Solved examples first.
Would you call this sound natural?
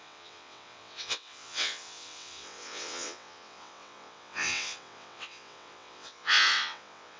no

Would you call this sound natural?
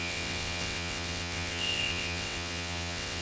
no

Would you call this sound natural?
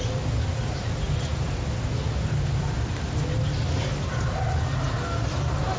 yes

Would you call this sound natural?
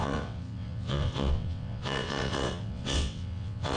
no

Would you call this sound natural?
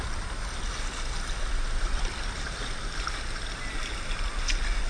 yes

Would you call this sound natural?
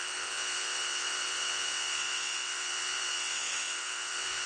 no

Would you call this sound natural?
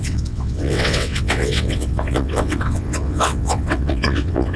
no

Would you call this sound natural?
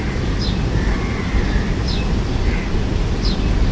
yes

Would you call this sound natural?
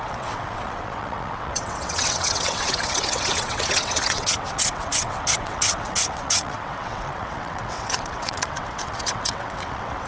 no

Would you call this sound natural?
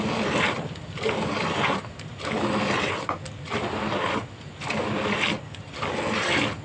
yes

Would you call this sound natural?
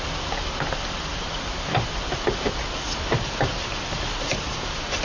yes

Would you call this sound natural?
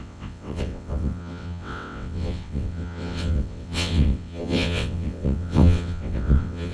no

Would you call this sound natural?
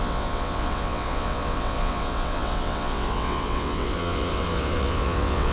no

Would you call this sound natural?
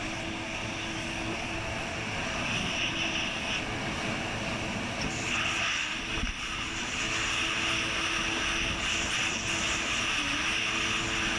yes